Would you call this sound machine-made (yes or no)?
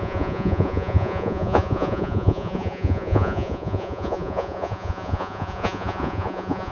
yes